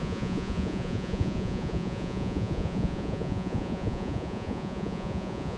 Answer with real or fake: fake